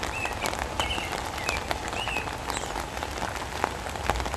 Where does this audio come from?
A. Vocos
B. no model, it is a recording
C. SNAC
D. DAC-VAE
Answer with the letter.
B